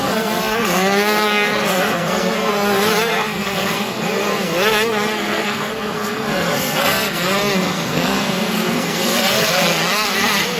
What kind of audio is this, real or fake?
fake